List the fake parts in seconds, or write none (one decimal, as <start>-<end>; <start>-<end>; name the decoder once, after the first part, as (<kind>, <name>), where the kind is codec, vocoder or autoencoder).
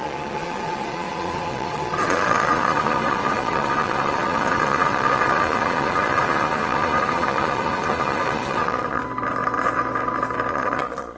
0.0-9.0 (vocoder, Vocos); 10.5-11.2